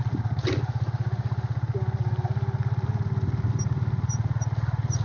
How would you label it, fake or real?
real